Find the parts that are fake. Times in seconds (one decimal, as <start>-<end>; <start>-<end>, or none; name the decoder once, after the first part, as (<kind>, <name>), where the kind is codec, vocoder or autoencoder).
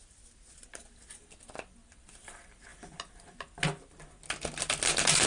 none